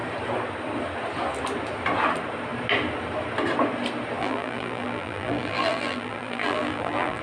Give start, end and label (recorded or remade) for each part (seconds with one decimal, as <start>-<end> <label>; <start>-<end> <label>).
0.0-4.2 recorded; 4.2-7.2 remade